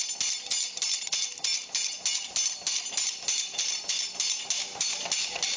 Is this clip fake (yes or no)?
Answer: no